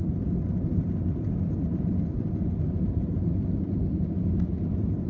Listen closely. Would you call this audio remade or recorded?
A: recorded